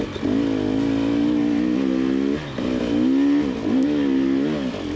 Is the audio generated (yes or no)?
no